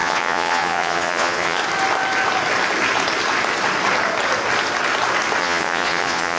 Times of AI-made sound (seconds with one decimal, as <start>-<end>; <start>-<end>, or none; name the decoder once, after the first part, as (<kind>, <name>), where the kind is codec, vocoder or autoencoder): 0.0-1.6 (vocoder, Vocos); 5.4-6.4